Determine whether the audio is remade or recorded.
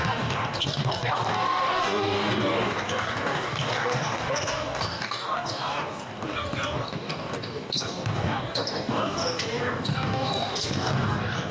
remade